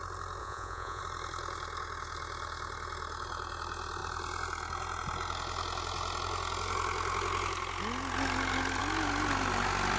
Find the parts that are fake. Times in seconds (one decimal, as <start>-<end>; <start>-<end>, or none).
0.4-1.0